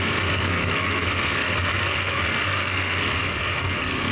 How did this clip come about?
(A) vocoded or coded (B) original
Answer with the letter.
A